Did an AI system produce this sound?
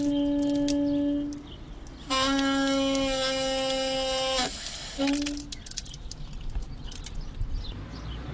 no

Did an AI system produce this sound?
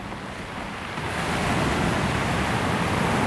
no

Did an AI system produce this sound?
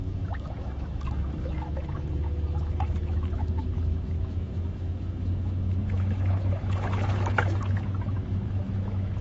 yes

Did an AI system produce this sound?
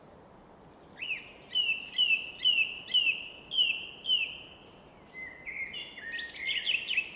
no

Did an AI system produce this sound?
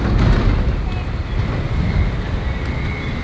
no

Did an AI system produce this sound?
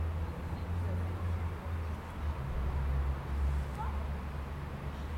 no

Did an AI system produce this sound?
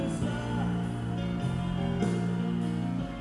no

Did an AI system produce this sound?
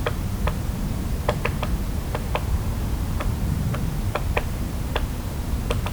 yes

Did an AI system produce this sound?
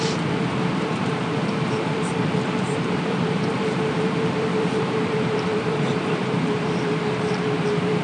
yes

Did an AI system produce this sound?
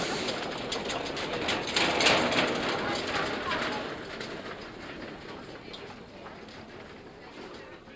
no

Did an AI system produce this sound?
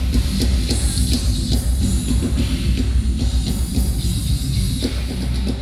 no